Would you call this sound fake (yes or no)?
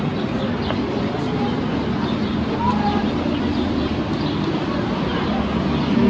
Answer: no